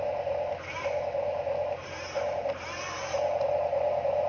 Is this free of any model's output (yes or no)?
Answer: yes